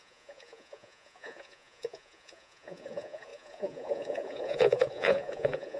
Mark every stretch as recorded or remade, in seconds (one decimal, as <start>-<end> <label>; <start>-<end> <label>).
0.0-5.8 remade